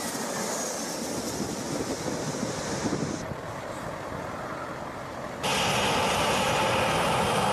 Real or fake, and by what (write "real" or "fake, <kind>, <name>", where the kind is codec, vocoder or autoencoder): real